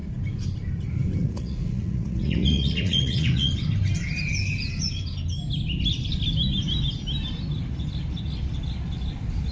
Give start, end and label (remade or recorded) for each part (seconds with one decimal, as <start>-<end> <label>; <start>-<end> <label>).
0.0-1.2 recorded; 1.2-3.5 remade; 3.5-9.5 recorded